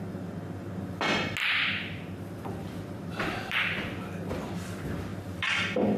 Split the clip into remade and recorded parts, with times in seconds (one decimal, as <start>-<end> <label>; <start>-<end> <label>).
0.0-1.4 recorded; 1.4-4.3 remade; 4.3-6.0 recorded